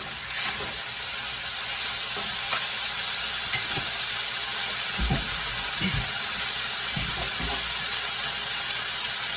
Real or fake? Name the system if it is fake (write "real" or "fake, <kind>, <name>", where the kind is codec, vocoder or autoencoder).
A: real